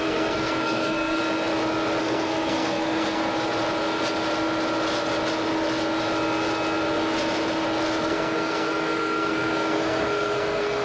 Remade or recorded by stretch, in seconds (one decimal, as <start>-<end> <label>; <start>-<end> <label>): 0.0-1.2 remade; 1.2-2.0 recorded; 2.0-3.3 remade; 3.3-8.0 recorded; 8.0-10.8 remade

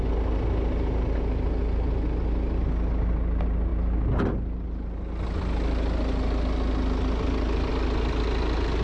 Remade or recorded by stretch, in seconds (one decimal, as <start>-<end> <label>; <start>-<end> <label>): 0.0-8.8 recorded

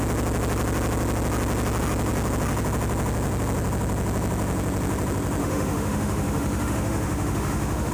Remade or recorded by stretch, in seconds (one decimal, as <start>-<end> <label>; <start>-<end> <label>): 0.0-5.4 recorded; 5.4-7.9 remade

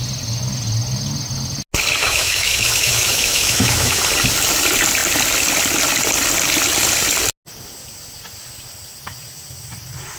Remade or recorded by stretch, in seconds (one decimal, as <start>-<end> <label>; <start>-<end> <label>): 0.0-2.0 recorded; 2.0-4.0 remade; 4.0-10.2 recorded

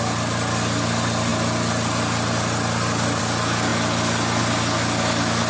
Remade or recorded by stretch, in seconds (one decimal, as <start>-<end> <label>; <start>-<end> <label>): 0.0-5.5 recorded

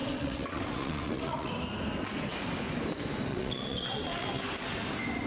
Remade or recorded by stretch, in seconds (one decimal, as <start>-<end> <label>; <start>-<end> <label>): 0.0-1.5 remade; 1.5-3.3 recorded; 3.3-4.4 remade; 4.4-5.3 recorded

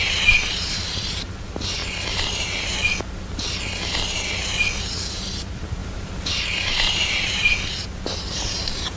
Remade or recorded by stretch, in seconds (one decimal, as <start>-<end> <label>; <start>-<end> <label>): 0.0-1.8 remade; 1.8-4.8 recorded; 4.8-9.0 remade

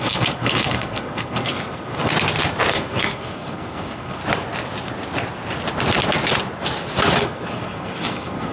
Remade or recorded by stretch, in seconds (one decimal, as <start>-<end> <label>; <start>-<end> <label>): 0.0-2.1 remade; 2.1-2.7 recorded; 2.7-4.2 remade; 4.2-7.2 recorded; 7.2-8.5 remade